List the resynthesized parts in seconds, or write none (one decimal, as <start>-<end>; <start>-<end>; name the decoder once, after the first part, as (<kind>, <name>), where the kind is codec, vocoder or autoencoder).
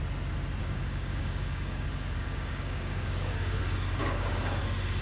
0.6-3.6 (codec, DAC); 4.0-4.6